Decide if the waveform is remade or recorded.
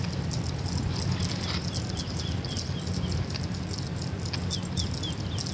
recorded